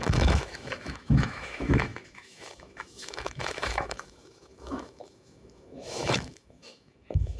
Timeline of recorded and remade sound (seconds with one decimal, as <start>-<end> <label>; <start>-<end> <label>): 0.0-7.4 remade